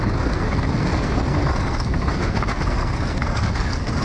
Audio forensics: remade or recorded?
remade